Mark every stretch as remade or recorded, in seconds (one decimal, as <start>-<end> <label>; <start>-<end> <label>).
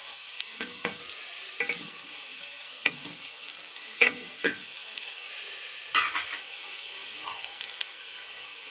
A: 0.0-1.0 remade; 1.0-1.8 recorded; 1.8-5.3 remade; 5.3-6.4 recorded; 6.4-8.7 remade